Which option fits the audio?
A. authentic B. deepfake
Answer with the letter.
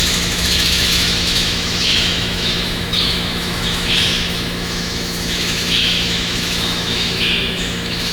B